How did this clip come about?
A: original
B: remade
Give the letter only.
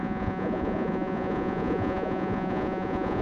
B